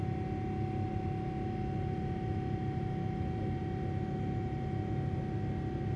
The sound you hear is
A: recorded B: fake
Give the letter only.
A